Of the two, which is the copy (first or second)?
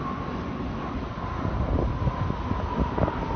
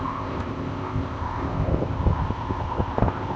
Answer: second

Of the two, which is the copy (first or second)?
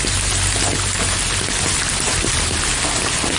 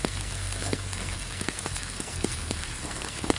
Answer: second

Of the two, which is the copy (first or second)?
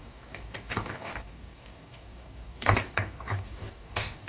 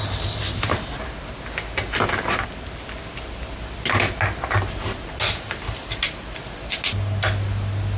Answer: first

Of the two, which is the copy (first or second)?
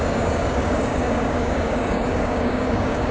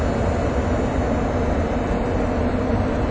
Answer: first